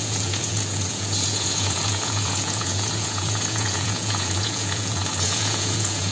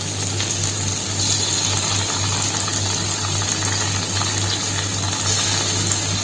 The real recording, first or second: second